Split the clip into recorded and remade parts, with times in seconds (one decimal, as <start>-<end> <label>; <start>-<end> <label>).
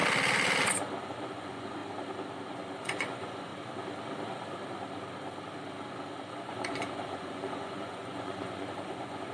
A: 0.0-1.0 recorded; 1.0-1.8 remade; 1.8-2.5 recorded; 2.5-3.5 remade; 3.5-6.3 recorded; 6.3-9.3 remade